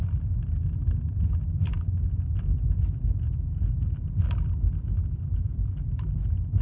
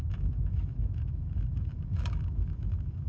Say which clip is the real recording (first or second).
first